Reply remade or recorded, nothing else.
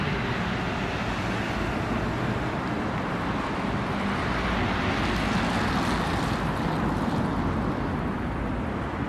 recorded